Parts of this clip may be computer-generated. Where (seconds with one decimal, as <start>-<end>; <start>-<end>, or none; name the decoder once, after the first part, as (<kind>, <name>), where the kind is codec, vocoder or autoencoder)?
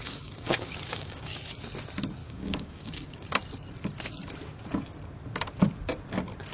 0.0-1.4 (codec, DAC); 2.2-3.3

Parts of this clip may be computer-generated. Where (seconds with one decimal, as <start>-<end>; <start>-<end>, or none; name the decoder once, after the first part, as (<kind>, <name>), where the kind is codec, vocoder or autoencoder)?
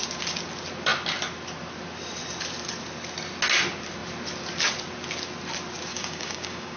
5.9-6.8 (codec, DAC)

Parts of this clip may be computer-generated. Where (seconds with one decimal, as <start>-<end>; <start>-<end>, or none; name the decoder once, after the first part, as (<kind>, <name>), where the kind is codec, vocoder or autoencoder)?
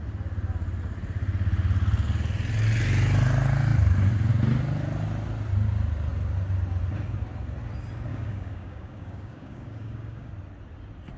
8.1-10.3 (codec, DAC)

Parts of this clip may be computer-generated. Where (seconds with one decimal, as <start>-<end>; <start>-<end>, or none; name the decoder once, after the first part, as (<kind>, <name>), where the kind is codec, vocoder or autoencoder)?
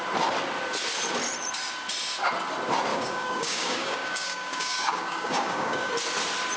2.9-5.9 (codec, DAC)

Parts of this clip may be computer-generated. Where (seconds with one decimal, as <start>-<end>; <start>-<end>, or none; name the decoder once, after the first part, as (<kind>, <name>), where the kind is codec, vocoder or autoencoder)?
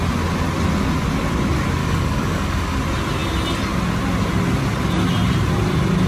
1.8-2.8 (codec, DAC)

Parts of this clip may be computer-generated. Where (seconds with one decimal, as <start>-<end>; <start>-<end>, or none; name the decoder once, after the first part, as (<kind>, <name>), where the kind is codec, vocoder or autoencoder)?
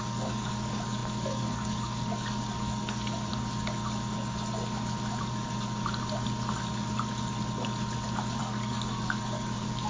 0.0-3.3 (codec, DAC); 8.4-9.9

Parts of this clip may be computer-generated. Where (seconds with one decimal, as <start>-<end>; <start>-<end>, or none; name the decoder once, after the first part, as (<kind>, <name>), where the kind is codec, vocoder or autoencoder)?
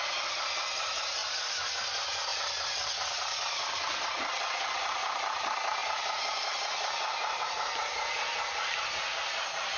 none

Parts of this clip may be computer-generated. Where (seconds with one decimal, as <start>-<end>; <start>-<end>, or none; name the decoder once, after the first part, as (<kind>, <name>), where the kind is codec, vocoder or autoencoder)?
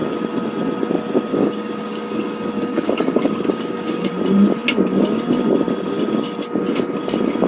1.3-4.1 (codec, DAC)